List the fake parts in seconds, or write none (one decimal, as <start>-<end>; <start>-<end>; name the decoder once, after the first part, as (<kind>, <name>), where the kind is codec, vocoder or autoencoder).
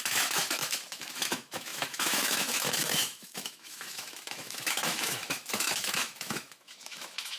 0.0-7.4 (autoencoder, DAC-VAE)